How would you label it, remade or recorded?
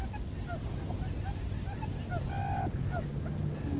recorded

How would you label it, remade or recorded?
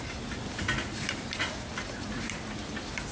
recorded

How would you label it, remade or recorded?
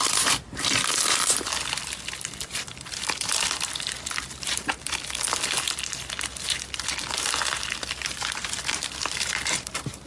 remade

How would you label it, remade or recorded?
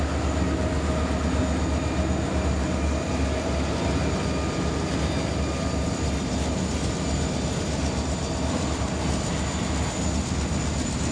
recorded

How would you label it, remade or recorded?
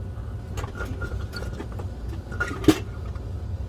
recorded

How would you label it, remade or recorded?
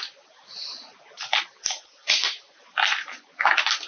remade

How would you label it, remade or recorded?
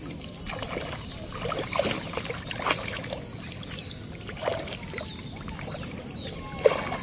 recorded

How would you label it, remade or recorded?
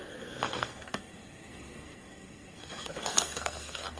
remade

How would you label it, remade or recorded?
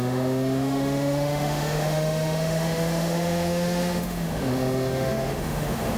remade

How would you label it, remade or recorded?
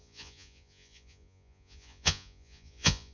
remade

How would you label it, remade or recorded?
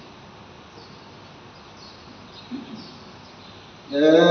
recorded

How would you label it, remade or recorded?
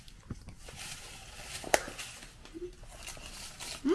recorded